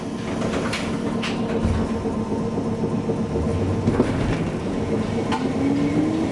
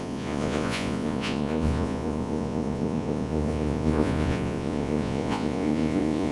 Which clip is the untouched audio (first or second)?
first